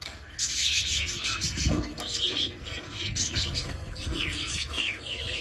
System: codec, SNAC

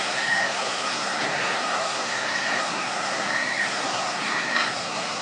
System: codec, SNAC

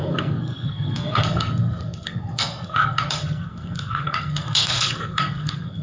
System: codec, SNAC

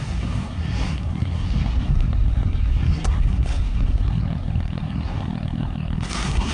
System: codec, SNAC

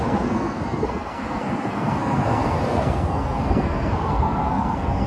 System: codec, SNAC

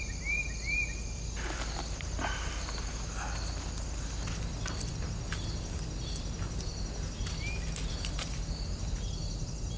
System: none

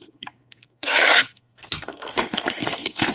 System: codec, SNAC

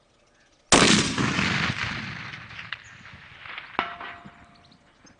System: none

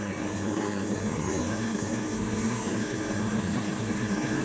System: codec, SNAC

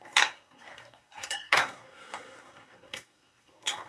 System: codec, SNAC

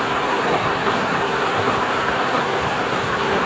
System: codec, SNAC